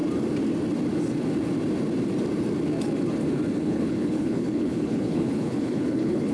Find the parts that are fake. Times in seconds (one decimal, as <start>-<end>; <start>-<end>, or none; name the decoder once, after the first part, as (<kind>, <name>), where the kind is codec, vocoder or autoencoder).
3.6-6.3 (codec, HILCodec)